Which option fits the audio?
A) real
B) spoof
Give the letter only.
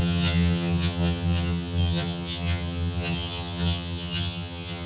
B